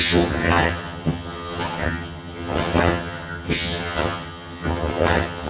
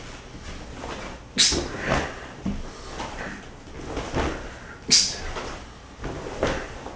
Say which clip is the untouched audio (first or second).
second